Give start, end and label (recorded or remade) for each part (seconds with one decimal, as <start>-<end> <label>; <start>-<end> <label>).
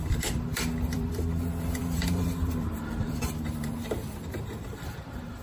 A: 0.0-5.4 remade